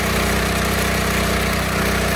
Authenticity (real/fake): fake